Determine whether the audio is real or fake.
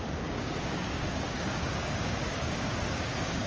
fake